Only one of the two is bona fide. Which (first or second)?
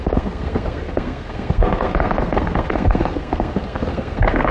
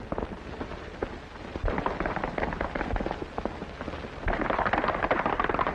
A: second